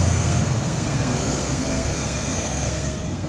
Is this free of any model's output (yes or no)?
no